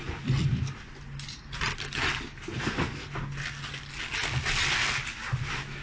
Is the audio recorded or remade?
recorded